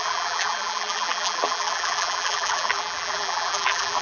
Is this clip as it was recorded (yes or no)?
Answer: no